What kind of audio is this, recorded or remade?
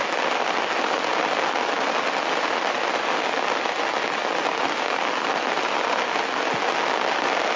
recorded